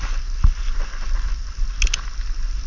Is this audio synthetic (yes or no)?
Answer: no